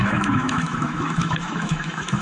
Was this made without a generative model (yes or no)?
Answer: no